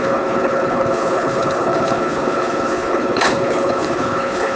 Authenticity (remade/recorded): remade